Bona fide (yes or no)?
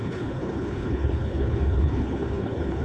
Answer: no